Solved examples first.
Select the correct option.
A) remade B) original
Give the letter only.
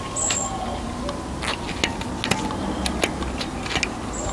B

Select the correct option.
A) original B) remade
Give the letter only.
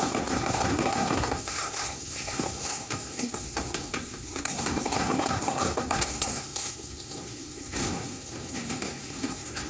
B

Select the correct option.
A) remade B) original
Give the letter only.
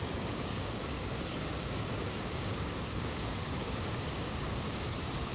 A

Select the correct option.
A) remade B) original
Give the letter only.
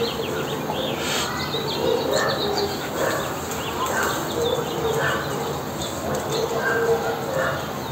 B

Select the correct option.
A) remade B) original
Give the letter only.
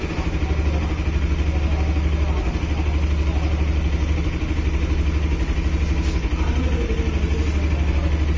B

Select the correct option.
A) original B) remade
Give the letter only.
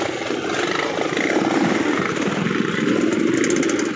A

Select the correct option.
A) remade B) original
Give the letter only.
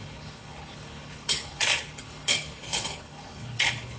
A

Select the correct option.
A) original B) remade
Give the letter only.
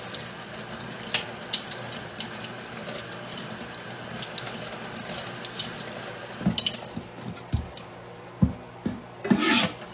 A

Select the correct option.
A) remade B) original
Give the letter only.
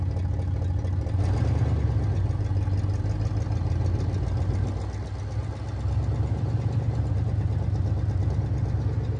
B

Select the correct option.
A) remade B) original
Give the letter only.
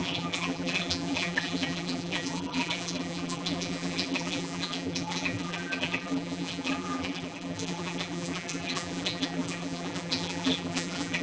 A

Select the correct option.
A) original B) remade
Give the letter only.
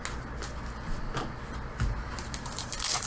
A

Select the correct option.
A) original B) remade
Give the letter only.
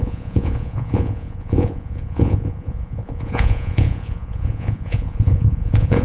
B